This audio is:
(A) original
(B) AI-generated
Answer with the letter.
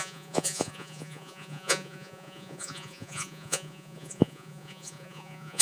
B